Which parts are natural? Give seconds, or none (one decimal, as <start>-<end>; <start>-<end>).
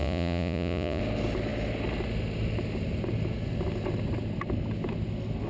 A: 1.0-5.5